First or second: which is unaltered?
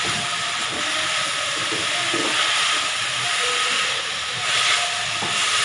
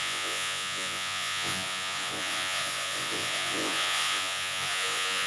first